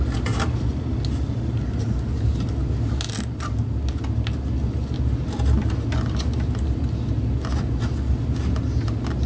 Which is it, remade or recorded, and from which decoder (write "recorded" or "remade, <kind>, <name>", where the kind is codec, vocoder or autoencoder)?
recorded